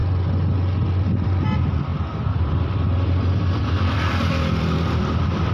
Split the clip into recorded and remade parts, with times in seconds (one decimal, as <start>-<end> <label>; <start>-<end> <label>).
0.0-1.0 recorded; 1.0-5.5 remade